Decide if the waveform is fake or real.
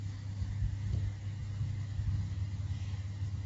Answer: real